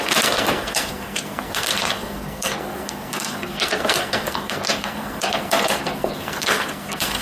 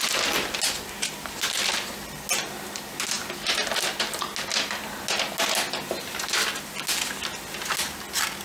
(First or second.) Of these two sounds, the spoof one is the first